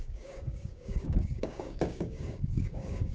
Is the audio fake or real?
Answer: fake